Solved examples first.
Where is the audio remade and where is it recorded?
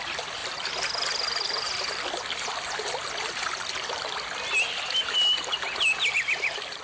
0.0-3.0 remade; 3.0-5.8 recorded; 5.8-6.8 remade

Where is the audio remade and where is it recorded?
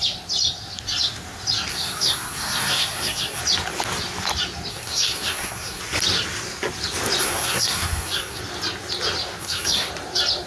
0.0-1.7 recorded; 1.7-3.4 remade; 3.4-4.7 recorded; 4.7-5.8 remade; 5.8-7.2 recorded; 7.2-8.4 remade; 8.4-9.4 recorded; 9.4-9.9 remade; 9.9-10.5 recorded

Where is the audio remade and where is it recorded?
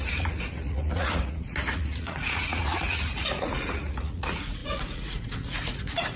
0.0-6.2 remade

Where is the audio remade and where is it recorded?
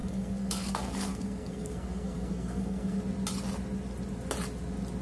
0.0-3.0 remade; 3.0-5.0 recorded